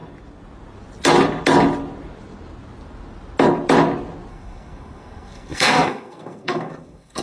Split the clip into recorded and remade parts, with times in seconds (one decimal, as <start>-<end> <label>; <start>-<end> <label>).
0.0-4.3 recorded; 4.3-7.2 remade